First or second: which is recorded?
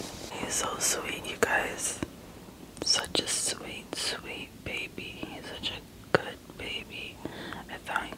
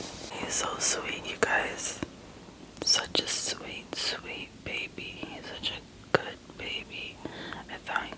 second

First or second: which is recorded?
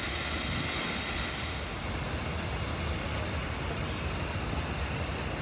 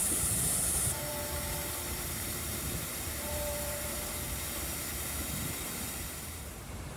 first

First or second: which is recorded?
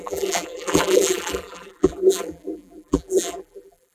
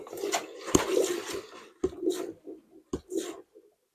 second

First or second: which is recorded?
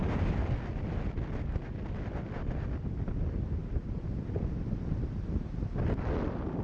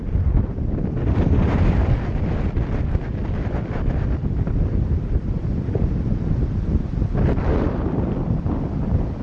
first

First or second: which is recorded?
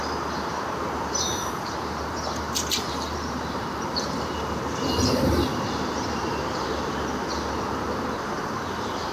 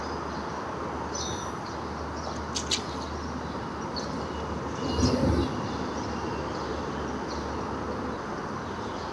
second